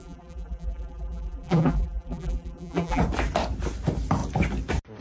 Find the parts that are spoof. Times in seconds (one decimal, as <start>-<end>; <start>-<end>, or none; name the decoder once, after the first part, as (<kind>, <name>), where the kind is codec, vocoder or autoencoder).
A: 0.0-3.0 (vocoder, BigVGAN v2)